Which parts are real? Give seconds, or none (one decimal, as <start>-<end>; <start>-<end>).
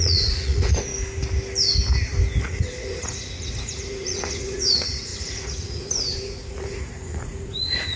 0.9-2.4